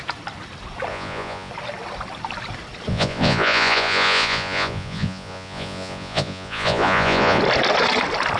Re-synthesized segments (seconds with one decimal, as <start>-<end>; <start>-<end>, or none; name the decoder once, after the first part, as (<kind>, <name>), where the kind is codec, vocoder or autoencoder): 0.9-1.5 (vocoder, Vocos); 2.9-7.4